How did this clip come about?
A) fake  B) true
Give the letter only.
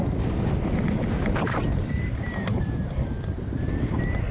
B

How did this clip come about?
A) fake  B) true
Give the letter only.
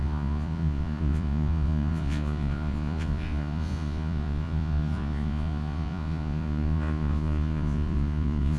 A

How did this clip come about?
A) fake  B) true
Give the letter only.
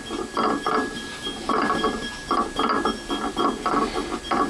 B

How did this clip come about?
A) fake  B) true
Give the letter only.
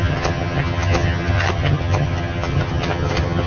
A